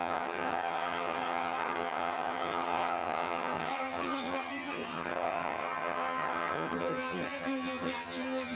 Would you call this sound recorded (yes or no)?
no